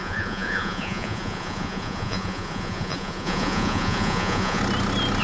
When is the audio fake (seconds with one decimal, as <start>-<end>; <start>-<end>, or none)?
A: 0.0-4.6